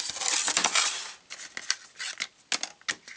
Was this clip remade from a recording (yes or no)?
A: no